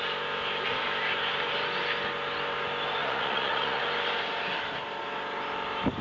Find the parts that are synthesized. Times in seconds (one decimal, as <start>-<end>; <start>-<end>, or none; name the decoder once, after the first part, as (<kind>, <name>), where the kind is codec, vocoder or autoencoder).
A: 3.0-3.8 (vocoder, Vocos)